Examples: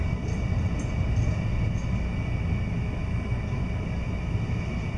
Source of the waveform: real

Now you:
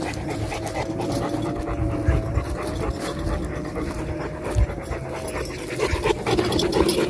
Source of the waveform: real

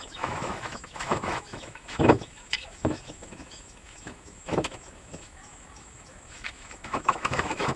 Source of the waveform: fake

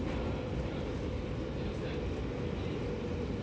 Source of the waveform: real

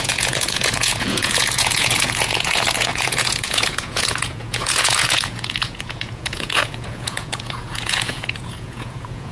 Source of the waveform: fake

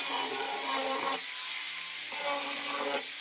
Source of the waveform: real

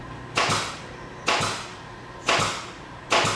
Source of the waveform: real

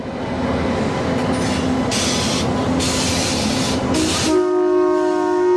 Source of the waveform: real